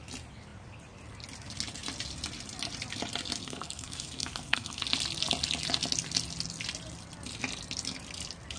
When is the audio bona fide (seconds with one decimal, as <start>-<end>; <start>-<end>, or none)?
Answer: 0.0-3.4; 4.8-8.6